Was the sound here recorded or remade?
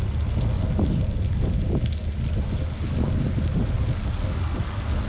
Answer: recorded